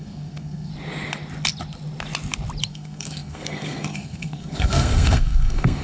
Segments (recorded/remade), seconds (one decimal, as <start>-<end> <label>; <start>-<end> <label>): 0.0-0.7 remade; 0.7-2.7 recorded; 2.7-5.8 remade